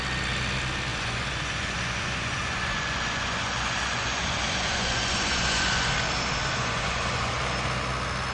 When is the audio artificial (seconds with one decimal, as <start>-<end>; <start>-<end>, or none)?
0.9-5.9; 6.5-7.4